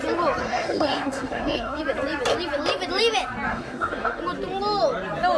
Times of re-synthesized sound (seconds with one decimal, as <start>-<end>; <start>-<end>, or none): 0.4-1.8; 3.5-4.2